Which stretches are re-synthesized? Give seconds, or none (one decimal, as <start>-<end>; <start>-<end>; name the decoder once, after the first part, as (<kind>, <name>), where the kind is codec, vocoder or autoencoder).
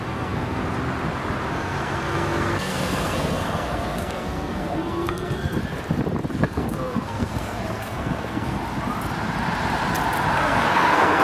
0.0-0.6 (codec, SNAC); 1.5-5.6; 6.3-8.6; 10.3-11.2